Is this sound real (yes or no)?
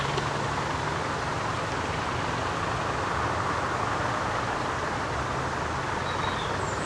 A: yes